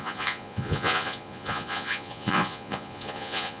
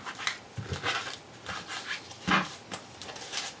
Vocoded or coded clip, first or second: first